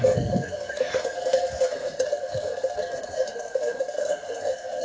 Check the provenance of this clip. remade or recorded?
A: remade